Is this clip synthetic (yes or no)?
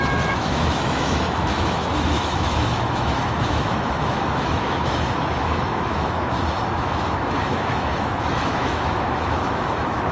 yes